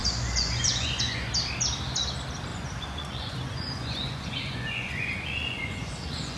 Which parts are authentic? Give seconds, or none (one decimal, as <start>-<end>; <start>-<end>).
1.3-2.5